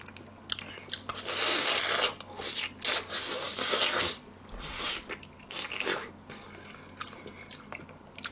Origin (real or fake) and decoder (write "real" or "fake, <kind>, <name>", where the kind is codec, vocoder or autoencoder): real